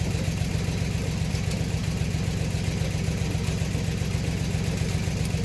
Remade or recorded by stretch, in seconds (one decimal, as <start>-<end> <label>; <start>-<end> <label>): 0.0-5.4 recorded